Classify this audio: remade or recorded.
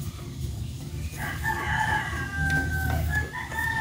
remade